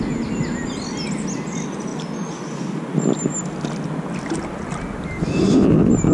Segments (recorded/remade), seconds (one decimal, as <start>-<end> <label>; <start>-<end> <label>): 0.0-6.1 recorded